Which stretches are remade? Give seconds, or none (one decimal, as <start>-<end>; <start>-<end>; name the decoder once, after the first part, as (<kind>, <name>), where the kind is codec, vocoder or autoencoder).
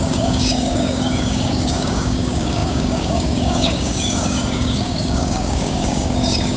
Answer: 0.0-6.6 (codec, DAC)